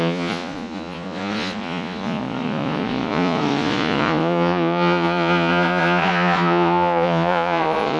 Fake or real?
fake